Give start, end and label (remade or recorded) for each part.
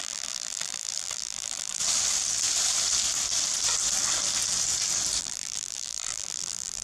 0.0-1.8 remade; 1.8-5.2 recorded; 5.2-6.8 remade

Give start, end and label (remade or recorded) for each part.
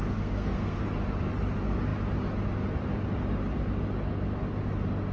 0.0-0.8 remade; 0.8-5.1 recorded